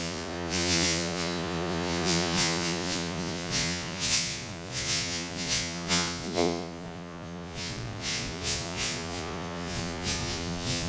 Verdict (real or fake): fake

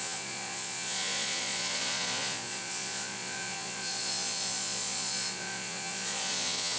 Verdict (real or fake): fake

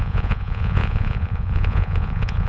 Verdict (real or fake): fake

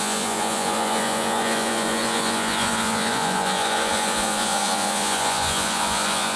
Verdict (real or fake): fake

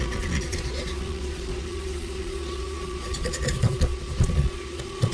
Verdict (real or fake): fake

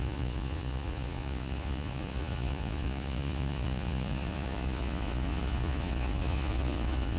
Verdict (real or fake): fake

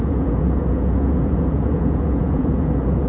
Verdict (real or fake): fake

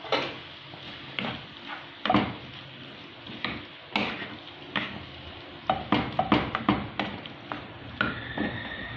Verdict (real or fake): real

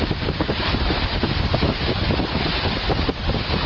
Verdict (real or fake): real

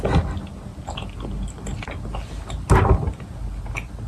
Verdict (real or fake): real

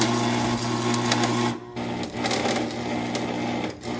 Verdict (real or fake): real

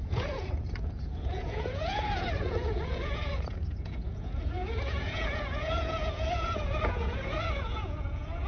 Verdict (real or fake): fake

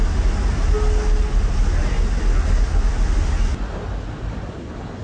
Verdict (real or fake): real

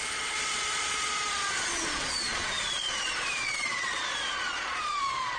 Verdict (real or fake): fake